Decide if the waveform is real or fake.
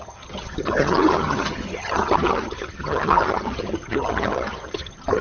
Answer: fake